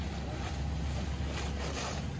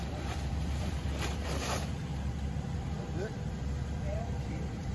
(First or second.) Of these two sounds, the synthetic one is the second